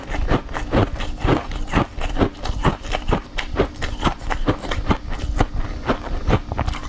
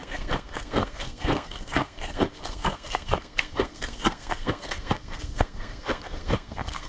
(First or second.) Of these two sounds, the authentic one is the first